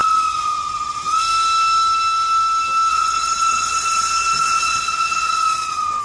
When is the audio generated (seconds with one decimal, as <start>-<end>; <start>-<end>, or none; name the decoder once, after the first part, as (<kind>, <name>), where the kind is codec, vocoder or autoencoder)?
0.0-1.2 (vocoder, WaveNeXt); 2.9-6.0